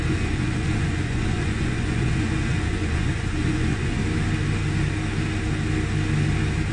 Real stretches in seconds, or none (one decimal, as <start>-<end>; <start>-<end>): 4.0-6.7